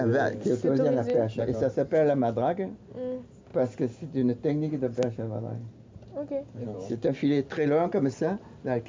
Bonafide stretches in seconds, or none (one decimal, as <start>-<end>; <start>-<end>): 0.0-8.9

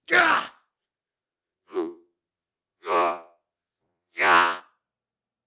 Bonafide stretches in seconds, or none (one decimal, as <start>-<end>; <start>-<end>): 0.0-1.3; 4.6-5.5

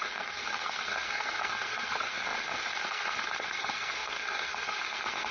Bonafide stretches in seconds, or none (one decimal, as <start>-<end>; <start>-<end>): none